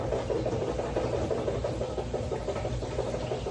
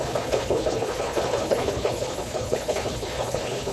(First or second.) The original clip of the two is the first